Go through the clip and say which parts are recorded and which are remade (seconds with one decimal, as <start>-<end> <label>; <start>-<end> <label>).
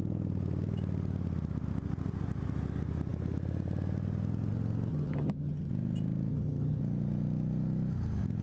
0.0-4.9 recorded; 4.9-5.7 remade; 5.7-6.3 recorded; 6.3-6.8 remade; 6.8-8.4 recorded